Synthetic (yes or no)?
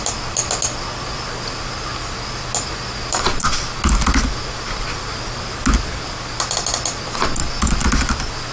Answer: no